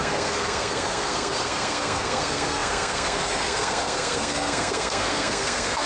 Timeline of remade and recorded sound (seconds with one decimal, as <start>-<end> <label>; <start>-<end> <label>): 0.0-5.9 remade